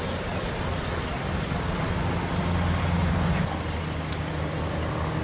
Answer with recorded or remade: recorded